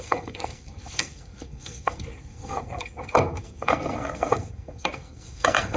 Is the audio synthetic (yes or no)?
yes